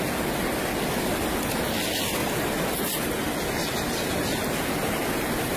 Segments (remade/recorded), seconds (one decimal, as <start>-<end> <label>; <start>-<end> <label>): 0.0-2.2 recorded; 2.2-2.7 remade; 2.7-5.6 recorded